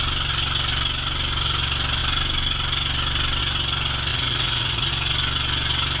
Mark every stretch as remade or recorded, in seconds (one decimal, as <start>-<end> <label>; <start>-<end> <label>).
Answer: 0.0-4.1 recorded; 4.1-4.9 remade; 4.9-6.0 recorded